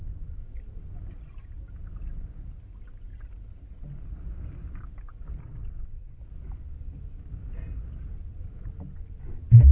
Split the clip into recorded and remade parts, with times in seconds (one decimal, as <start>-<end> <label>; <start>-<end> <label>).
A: 0.0-5.4 recorded; 5.4-6.2 remade; 6.2-9.7 recorded